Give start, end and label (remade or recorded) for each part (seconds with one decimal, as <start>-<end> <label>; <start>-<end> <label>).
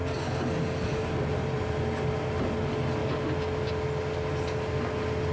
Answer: 0.0-0.9 recorded; 0.9-1.8 remade; 1.8-5.3 recorded